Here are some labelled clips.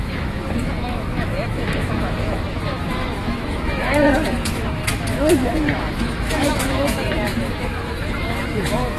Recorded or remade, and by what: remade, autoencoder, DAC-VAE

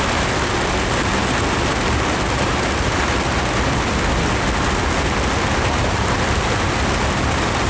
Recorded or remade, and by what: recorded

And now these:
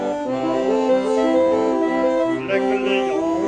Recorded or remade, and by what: recorded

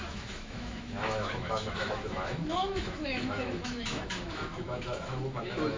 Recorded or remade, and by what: remade, autoencoder, DAC-VAE